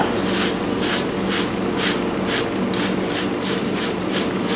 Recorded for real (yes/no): yes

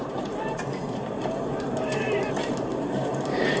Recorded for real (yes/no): no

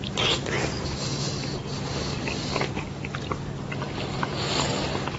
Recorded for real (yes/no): yes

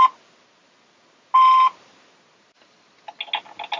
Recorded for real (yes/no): yes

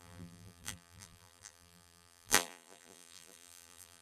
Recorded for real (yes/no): no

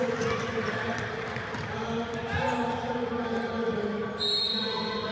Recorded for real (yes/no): yes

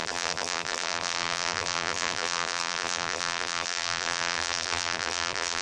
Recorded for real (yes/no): no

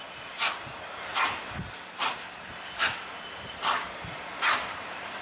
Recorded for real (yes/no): yes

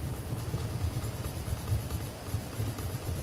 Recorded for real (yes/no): yes